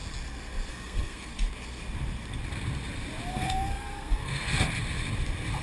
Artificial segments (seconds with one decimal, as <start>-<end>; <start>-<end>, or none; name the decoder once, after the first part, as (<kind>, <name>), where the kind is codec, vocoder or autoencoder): 0.7-1.3 (codec, SNAC); 3.3-4.5